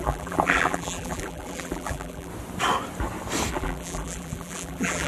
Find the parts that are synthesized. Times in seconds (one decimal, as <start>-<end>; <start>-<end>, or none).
0.0-2.3; 3.5-5.1